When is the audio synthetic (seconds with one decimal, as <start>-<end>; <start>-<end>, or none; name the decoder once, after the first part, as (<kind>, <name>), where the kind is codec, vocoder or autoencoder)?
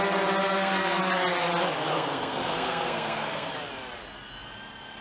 0.4-1.0 (codec, SNAC); 1.9-3.5